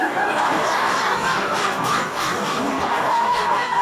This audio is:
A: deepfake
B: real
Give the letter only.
A